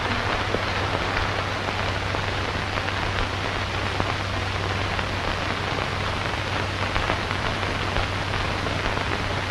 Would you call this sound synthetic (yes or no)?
no